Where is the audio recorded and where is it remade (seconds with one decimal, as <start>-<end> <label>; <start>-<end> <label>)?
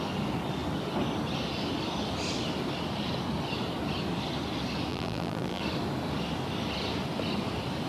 0.0-4.9 recorded; 4.9-5.6 remade; 5.6-7.9 recorded